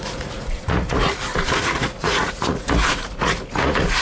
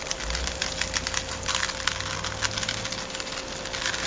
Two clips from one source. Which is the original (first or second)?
second